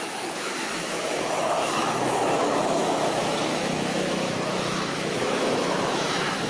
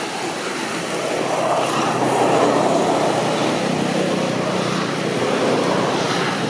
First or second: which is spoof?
first